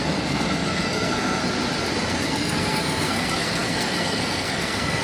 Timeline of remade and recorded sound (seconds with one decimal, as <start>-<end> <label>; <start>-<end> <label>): 0.0-1.4 remade; 1.4-2.1 recorded; 2.1-5.0 remade

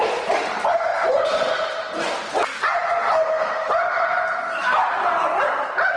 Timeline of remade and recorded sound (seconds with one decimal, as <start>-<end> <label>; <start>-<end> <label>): 0.0-6.0 recorded